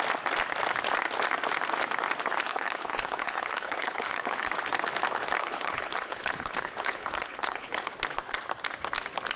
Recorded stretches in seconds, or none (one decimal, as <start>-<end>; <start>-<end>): 0.0-2.5; 4.5-5.4; 7.9-9.4